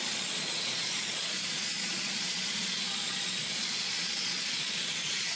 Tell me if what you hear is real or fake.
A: fake